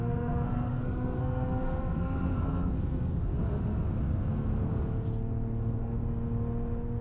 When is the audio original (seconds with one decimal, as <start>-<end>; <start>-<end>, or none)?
3.3-4.0; 4.7-5.6; 6.0-7.0